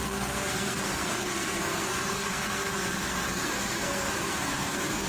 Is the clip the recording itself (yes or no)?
no